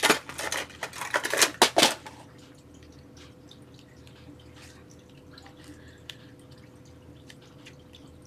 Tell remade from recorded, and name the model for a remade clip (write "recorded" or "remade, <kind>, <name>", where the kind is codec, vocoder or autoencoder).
recorded